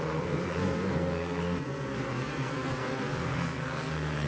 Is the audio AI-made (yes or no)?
yes